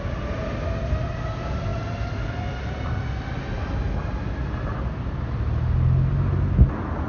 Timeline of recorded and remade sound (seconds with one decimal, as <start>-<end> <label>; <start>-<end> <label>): 0.0-7.1 recorded